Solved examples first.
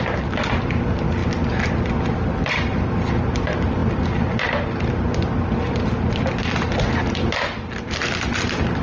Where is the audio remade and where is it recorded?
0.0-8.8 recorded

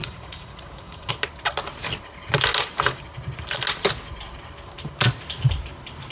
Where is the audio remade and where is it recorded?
0.0-1.1 remade; 1.1-6.1 recorded

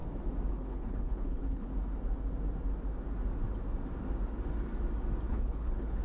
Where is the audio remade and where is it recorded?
0.0-0.5 recorded; 0.5-1.7 remade; 1.7-5.3 recorded; 5.3-6.0 remade

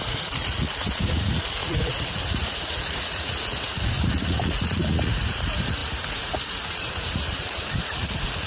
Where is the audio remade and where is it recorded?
0.0-8.5 remade

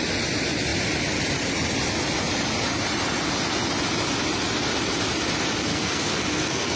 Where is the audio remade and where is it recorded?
0.0-5.7 recorded; 5.7-6.8 remade

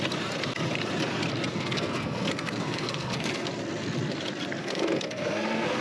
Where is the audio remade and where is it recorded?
0.0-1.5 recorded; 1.5-3.5 remade; 3.5-4.6 recorded; 4.6-5.8 remade

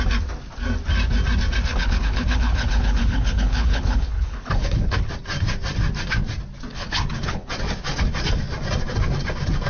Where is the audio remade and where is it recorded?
0.0-1.7 recorded; 1.7-5.1 remade; 5.1-6.7 recorded; 6.7-7.5 remade; 7.5-9.7 recorded

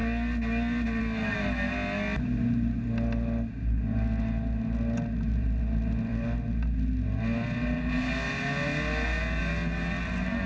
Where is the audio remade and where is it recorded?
0.0-10.5 recorded